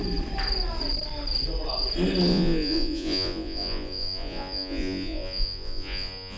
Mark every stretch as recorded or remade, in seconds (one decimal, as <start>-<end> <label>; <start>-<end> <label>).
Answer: 0.0-2.3 recorded; 2.3-6.4 remade